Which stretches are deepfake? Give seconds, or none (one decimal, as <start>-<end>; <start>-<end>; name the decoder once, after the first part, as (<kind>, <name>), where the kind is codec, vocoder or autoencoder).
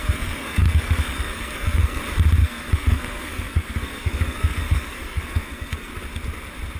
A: 0.0-2.0 (codec, SNAC); 2.4-5.9